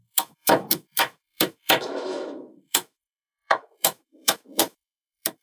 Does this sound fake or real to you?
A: fake